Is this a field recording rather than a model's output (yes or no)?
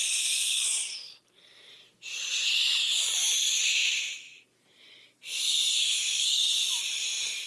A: yes